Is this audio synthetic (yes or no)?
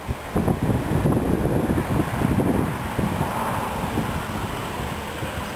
no